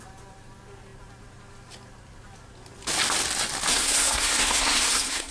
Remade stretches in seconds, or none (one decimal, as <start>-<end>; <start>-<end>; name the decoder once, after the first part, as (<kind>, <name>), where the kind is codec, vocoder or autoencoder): 3.7-5.3 (codec, SNAC)